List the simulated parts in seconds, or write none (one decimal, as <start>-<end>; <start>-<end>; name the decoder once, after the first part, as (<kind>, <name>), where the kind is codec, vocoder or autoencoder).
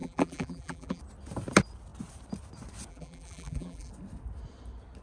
0.0-1.0 (vocoder, BigVGAN v2); 2.9-3.9